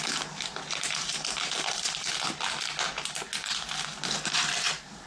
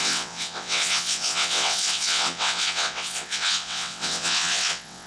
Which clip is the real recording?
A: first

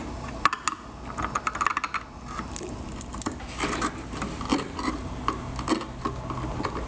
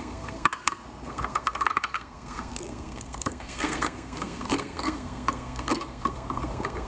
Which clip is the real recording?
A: first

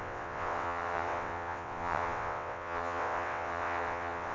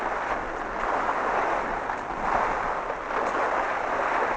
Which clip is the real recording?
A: second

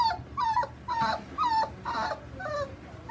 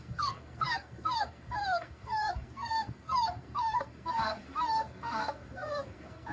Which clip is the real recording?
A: first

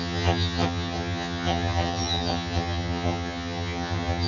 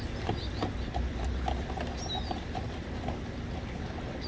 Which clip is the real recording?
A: second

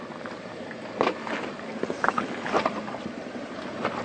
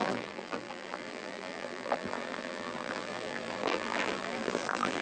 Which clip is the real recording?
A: first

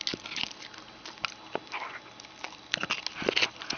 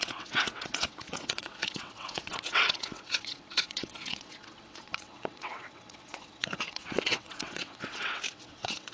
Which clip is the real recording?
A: first